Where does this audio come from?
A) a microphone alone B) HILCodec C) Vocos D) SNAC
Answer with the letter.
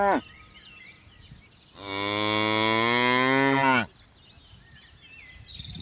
A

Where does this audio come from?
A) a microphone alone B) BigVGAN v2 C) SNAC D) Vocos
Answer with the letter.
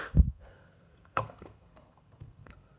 C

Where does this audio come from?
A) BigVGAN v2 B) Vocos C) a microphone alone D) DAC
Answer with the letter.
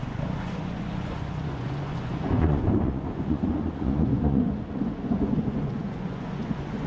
B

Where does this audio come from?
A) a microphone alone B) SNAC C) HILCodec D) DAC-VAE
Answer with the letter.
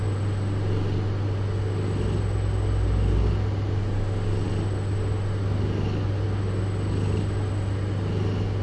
A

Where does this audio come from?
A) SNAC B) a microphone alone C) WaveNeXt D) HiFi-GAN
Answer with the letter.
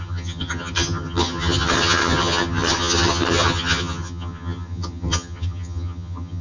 D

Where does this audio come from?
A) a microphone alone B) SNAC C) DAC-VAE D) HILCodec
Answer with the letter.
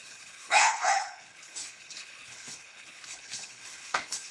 D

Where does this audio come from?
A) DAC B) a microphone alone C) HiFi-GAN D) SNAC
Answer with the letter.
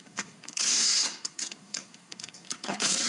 D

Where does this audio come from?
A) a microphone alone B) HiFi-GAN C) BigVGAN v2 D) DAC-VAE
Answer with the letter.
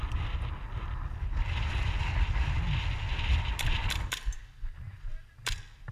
A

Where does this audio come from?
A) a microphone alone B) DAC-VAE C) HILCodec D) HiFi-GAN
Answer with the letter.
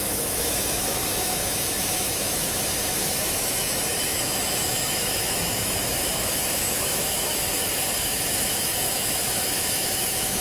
B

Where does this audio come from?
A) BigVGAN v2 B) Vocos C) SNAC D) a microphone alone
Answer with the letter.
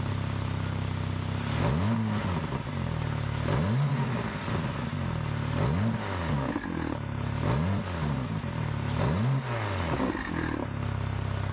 D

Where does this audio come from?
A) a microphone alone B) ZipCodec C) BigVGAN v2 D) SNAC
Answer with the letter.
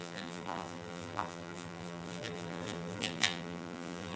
C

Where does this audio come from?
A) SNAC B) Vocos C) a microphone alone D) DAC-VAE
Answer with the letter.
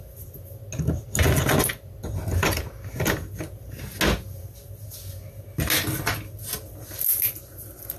C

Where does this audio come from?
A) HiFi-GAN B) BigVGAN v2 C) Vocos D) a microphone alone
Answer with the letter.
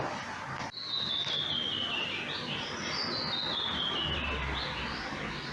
D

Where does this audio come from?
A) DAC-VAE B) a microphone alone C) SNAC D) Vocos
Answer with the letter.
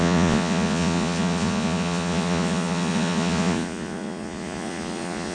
D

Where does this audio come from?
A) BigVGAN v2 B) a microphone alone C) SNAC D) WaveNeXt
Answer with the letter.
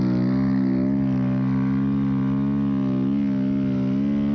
B